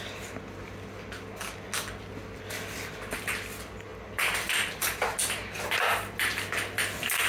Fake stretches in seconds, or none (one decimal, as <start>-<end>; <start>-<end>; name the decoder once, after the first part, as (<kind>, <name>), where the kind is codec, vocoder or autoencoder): none